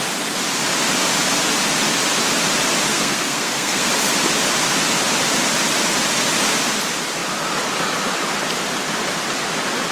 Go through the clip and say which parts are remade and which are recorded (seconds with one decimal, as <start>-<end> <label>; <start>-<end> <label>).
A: 0.0-2.9 recorded; 2.9-3.9 remade; 3.9-9.9 recorded